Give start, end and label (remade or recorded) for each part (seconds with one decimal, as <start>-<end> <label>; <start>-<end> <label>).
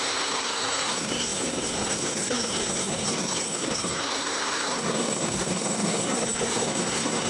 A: 0.0-7.3 remade